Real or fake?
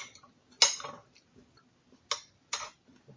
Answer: real